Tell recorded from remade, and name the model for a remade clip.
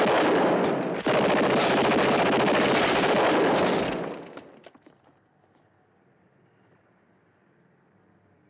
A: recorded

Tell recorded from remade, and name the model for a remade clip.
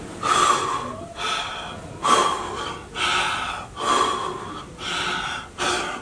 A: recorded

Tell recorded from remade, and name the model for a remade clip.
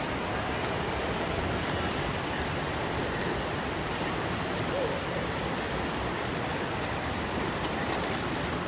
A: remade, vocoder, BigVGAN v2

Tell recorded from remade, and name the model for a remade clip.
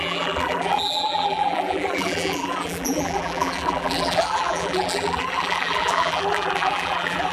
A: remade, vocoder, BigVGAN v2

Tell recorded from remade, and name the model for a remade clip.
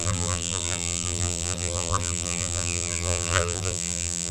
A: remade, vocoder, BigVGAN v2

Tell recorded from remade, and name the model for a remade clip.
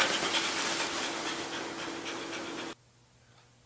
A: recorded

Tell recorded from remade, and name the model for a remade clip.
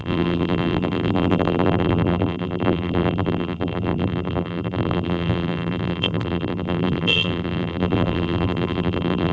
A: remade, vocoder, BigVGAN v2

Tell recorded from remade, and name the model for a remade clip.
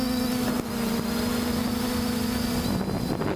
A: recorded